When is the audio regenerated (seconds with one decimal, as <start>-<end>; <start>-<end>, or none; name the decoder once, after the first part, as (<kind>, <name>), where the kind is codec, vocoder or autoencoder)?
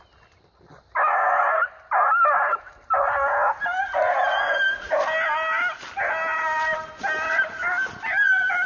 none